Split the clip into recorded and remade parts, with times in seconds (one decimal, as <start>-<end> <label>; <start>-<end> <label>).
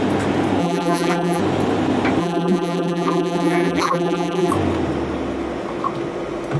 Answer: 0.0-0.6 recorded; 0.6-1.4 remade; 1.4-2.2 recorded; 2.2-4.5 remade; 4.5-6.6 recorded